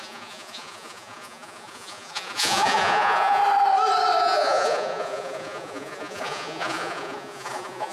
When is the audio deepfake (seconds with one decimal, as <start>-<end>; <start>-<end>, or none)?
0.0-3.4; 4.2-7.9